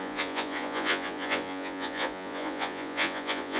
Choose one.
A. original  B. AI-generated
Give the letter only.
B